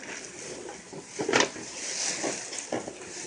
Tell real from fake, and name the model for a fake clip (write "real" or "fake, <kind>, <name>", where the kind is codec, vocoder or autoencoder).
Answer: real